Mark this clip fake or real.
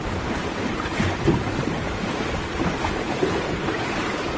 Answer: fake